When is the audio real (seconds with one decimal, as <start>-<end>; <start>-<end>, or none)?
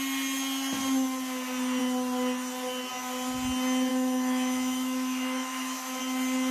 0.0-3.9; 6.0-6.5